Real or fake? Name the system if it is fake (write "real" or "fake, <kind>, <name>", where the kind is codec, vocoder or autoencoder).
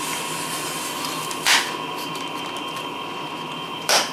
real